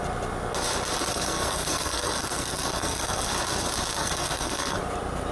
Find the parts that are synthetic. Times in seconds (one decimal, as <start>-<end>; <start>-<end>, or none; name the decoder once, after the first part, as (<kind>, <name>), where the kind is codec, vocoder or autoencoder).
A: 1.1-3.3 (codec, SNAC); 4.0-4.8